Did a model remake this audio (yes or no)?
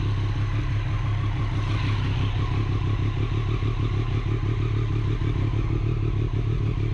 no